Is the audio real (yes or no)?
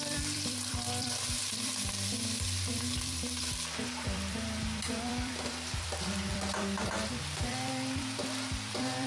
no